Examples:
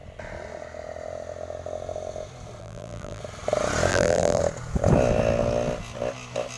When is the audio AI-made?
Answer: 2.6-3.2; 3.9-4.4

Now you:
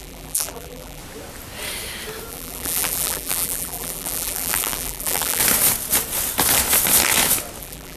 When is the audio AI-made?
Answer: 0.0-1.0; 2.3-5.4; 7.6-8.0

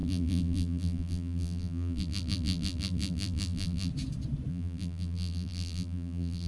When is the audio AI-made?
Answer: 0.0-3.9; 4.5-6.5

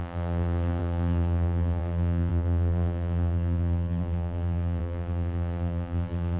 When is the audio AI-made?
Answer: 0.0-6.4

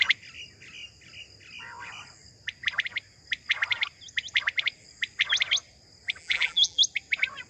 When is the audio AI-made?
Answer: 6.2-6.8

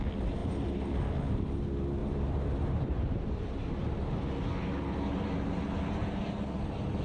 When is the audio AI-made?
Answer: 0.4-1.1; 2.0-3.7

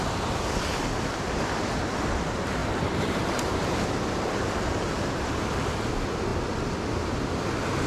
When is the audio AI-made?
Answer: 2.6-5.3